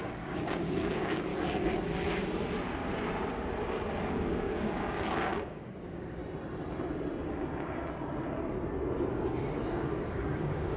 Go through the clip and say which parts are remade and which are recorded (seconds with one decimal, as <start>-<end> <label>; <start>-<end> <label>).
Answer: 0.0-1.3 remade; 1.3-4.1 recorded; 4.1-6.2 remade; 6.2-9.1 recorded; 9.1-10.8 remade